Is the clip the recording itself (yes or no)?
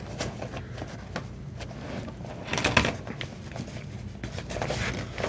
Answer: yes